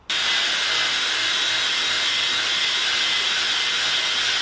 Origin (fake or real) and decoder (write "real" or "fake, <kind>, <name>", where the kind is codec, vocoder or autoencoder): real